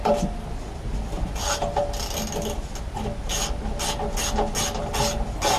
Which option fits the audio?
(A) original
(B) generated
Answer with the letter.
A